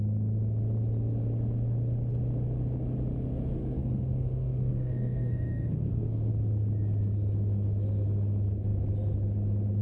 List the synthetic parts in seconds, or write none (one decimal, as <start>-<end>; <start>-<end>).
3.6-6.3